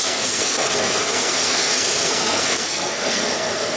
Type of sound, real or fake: fake